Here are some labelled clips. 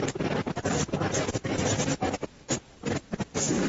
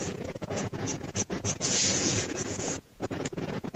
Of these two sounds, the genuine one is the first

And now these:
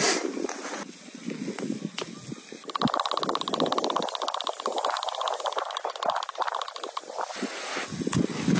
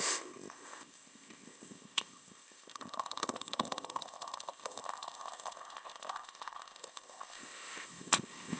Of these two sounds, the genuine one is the first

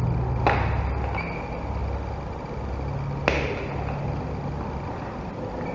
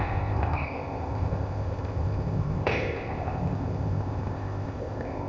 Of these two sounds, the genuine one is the first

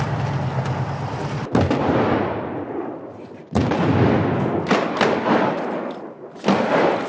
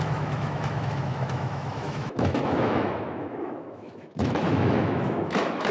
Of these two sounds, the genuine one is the first